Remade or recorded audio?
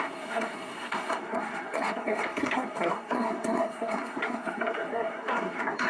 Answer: remade